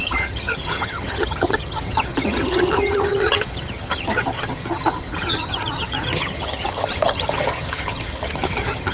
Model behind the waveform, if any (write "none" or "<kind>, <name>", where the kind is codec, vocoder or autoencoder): vocoder, HiFi-GAN